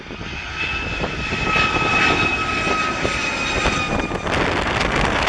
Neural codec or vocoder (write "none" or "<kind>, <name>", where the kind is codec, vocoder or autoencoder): none